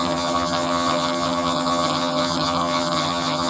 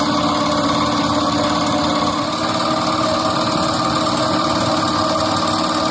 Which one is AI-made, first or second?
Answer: first